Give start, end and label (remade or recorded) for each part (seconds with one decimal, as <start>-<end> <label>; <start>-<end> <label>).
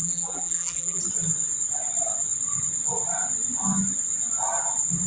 0.0-1.0 remade; 1.0-5.1 recorded